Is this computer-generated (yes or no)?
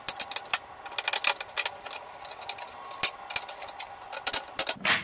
no